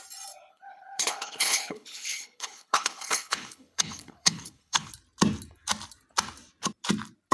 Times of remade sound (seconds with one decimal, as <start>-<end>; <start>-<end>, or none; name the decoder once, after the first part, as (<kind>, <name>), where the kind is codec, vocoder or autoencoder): 0.5-4.9 (codec, HILCodec)